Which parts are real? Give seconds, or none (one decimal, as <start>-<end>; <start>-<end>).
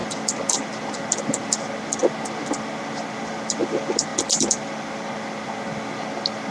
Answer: 0.0-6.5